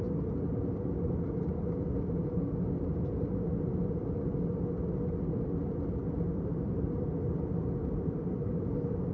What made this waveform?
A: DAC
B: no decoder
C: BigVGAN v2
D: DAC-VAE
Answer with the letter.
B